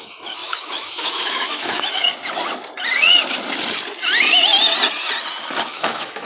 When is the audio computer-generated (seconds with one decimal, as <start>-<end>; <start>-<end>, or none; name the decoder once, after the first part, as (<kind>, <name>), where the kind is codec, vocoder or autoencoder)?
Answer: 0.0-2.0 (autoencoder, DAC-VAE); 5.7-6.2